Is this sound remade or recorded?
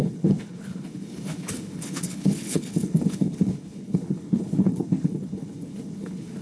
remade